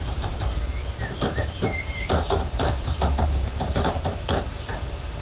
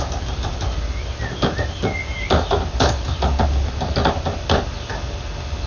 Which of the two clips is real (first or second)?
second